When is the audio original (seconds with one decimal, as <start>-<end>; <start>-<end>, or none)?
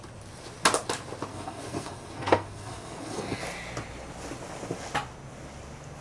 0.0-1.3; 3.4-6.0